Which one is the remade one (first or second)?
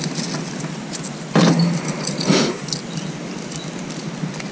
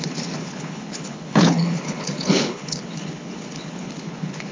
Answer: second